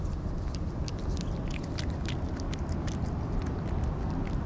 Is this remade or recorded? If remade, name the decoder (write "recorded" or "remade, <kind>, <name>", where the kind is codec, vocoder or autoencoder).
recorded